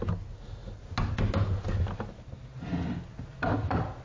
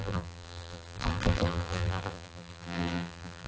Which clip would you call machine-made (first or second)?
second